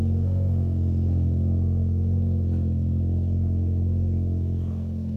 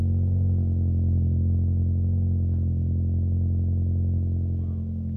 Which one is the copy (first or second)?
first